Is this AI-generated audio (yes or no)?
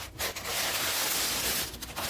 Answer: no